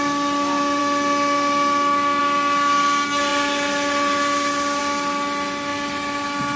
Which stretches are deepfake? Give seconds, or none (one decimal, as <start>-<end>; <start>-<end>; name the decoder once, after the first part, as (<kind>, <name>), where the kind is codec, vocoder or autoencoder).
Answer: none